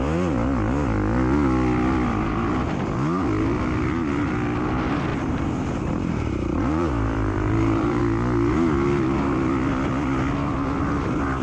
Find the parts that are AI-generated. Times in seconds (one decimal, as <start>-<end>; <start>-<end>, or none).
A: 5.1-8.0